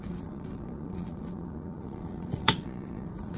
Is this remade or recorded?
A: remade